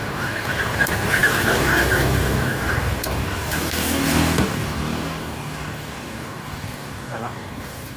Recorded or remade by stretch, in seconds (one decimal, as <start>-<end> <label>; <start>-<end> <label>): 0.0-8.0 remade